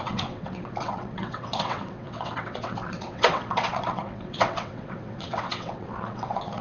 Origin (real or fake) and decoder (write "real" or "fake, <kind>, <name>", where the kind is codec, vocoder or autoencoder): fake, vocoder, WaveNeXt